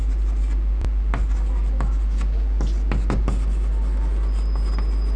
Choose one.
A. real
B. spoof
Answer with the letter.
A